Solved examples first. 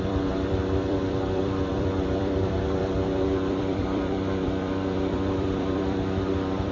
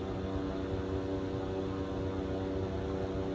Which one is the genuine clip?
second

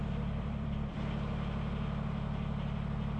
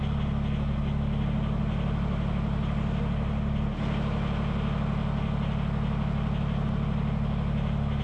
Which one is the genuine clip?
second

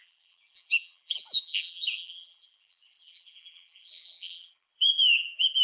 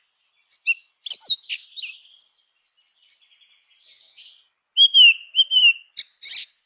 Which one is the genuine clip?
second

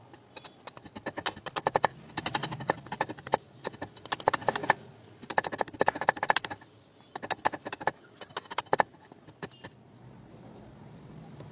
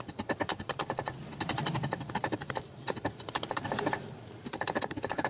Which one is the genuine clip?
first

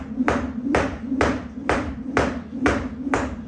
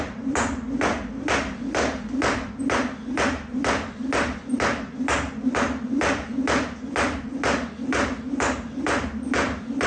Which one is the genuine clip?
second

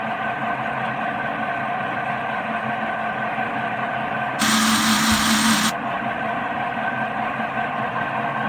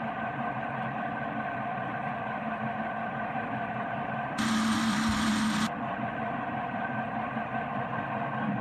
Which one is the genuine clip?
first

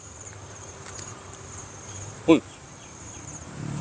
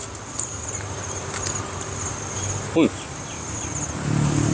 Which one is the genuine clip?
second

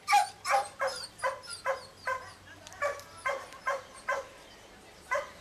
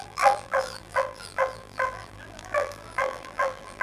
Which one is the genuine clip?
first